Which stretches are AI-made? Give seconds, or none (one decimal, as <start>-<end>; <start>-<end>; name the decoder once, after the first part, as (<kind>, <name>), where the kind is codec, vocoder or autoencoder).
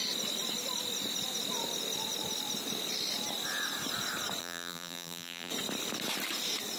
4.4-5.5 (vocoder, BigVGAN v2)